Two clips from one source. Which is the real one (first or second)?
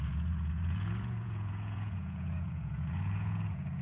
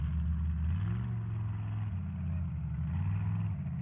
second